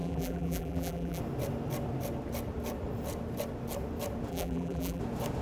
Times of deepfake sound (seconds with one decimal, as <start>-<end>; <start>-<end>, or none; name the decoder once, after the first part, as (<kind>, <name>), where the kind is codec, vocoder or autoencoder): 0.0-1.2 (vocoder, BigVGAN v2); 4.3-5.0